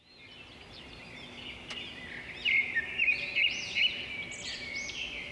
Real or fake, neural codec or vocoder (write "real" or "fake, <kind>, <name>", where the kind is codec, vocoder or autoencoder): real